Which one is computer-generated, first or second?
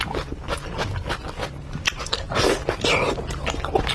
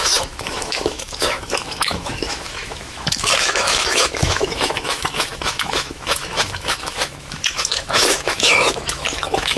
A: second